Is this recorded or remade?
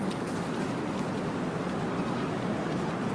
recorded